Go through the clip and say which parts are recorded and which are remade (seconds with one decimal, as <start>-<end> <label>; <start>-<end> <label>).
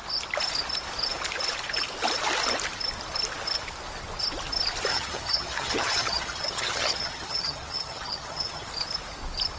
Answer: 0.0-4.9 recorded; 4.9-8.7 remade; 8.7-9.6 recorded